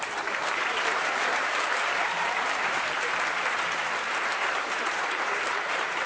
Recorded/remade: remade